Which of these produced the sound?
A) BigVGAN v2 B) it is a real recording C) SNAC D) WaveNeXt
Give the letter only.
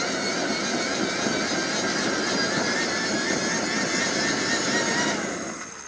A